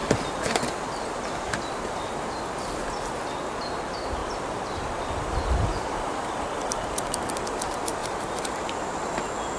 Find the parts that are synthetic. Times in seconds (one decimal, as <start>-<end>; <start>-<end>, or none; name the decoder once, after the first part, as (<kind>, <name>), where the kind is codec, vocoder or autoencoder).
0.0-2.4 (vocoder, BigVGAN v2); 4.2-5.0; 5.7-7.3; 8.0-8.9